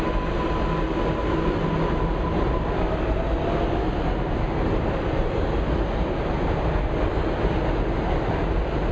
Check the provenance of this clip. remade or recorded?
recorded